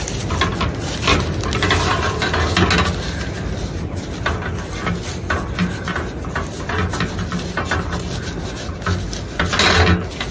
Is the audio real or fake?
real